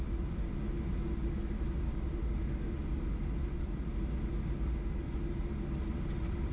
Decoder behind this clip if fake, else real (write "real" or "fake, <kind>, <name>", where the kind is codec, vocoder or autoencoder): real